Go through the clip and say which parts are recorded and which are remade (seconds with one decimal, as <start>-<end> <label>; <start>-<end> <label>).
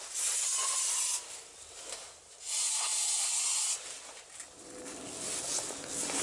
0.0-6.2 recorded